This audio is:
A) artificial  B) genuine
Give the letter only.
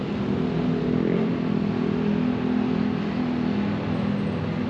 B